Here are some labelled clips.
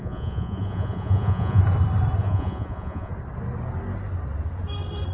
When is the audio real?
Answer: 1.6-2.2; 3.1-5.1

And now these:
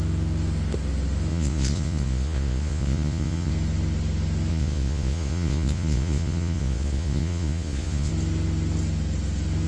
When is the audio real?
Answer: 0.0-1.3; 3.5-4.5; 8.1-9.7